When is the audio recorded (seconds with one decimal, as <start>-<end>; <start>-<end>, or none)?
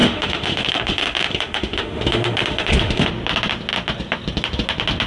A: 3.1-5.1